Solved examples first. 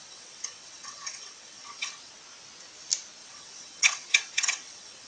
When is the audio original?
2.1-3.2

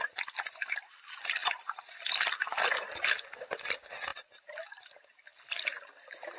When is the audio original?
0.0-6.4

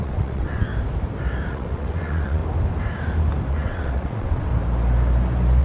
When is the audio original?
0.7-1.5; 2.4-3.5; 4.5-5.6

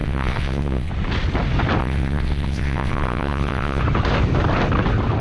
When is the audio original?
0.9-1.8; 3.8-5.2

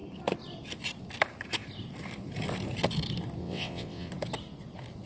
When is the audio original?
0.0-3.4; 4.1-5.1

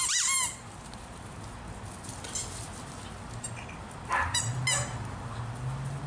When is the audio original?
0.0-6.1